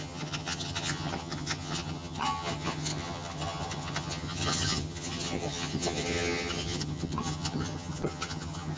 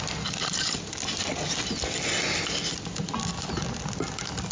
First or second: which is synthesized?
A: first